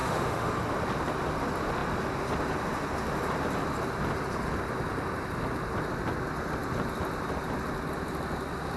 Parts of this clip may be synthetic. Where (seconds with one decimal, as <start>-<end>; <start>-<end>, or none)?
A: 0.0-0.5